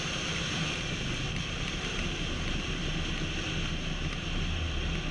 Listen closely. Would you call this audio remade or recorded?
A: recorded